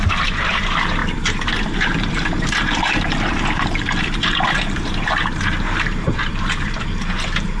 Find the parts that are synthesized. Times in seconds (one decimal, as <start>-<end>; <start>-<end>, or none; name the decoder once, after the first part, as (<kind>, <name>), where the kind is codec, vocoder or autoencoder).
0.0-7.6 (vocoder, BigVGAN v2)